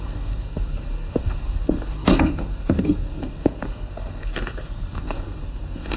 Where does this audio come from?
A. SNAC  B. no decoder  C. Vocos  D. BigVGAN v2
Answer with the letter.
A